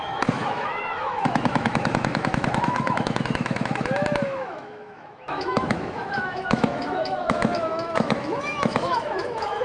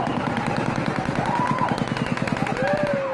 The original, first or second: second